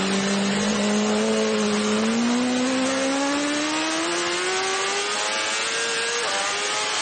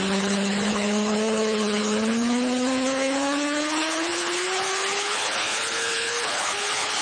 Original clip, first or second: first